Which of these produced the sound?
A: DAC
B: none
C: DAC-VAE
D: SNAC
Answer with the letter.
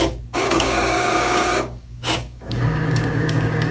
A